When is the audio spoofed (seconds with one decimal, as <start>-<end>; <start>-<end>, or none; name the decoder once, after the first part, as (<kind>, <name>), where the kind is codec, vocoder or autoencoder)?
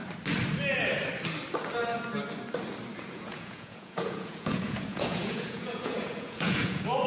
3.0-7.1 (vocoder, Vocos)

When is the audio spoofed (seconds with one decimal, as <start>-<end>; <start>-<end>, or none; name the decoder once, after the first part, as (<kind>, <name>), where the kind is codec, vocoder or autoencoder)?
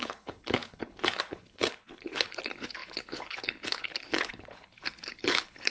0.0-5.7 (codec, HILCodec)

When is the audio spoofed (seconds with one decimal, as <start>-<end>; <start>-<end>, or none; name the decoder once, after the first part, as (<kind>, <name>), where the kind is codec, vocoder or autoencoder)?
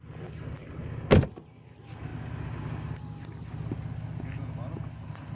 none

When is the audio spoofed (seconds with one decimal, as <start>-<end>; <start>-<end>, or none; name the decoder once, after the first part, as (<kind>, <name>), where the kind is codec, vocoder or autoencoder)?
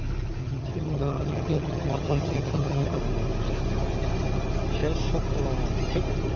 0.4-3.0 (vocoder, HiFi-GAN)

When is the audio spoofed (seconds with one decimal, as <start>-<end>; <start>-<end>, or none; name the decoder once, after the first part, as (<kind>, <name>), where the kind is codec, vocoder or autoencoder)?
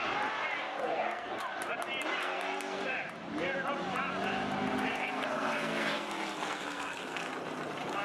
0.6-1.4 (codec, SNAC); 2.2-2.8; 4.9-7.3